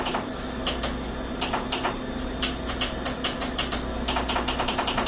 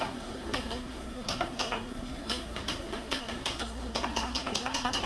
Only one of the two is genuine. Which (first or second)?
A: first